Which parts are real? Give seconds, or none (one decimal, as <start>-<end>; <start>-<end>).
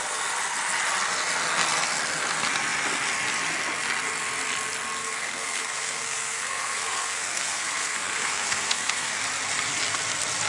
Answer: 0.0-5.0; 9.2-10.5